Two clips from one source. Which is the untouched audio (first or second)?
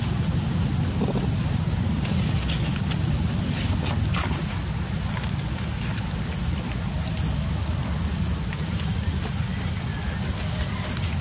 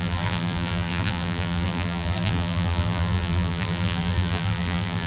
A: first